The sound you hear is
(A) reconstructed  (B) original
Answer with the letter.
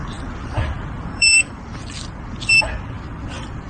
A